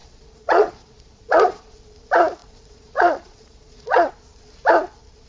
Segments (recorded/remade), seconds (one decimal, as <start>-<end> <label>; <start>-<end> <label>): 0.0-1.7 remade; 1.7-2.4 recorded; 2.4-4.1 remade; 4.1-5.3 recorded